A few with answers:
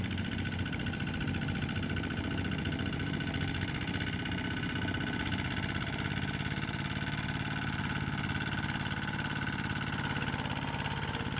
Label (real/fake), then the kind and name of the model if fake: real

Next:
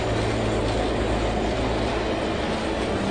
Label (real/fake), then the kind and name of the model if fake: real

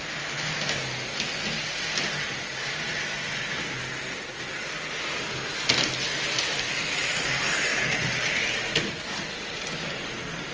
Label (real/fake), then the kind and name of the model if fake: real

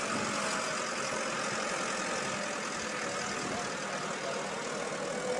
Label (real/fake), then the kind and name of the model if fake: real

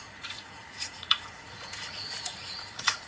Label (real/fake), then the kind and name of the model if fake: fake, vocoder, Vocos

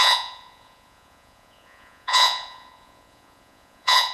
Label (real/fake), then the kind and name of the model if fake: fake, vocoder, Vocos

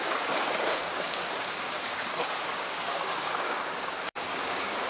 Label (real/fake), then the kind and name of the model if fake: fake, codec, DAC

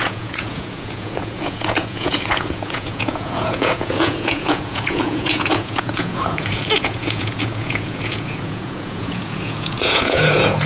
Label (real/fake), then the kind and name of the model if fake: fake, vocoder, Vocos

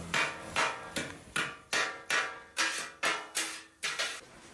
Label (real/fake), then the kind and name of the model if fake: real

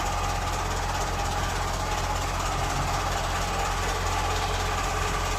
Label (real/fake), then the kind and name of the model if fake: real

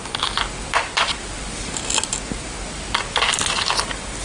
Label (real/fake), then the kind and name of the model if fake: real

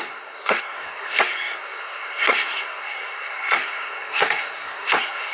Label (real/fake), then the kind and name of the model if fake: fake, codec, SNAC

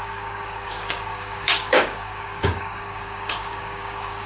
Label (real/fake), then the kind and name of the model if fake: fake, codec, DAC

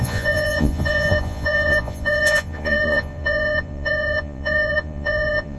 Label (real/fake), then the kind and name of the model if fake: fake, vocoder, Vocos